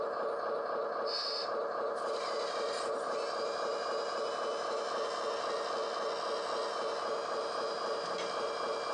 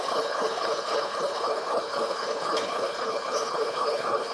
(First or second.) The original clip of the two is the first